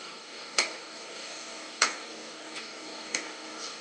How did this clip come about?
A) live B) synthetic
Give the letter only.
B